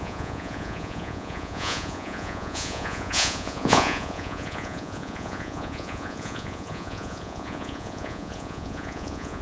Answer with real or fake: fake